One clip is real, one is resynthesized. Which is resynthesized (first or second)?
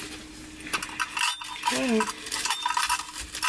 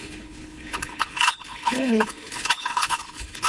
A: second